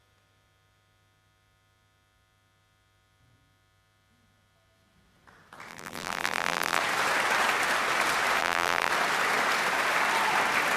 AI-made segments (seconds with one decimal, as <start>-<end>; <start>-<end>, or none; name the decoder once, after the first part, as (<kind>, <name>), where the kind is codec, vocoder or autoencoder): 5.7-6.8 (vocoder, BigVGAN v2); 8.4-8.9